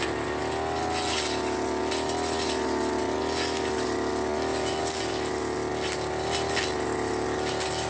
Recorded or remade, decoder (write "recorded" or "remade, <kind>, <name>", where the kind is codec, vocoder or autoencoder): recorded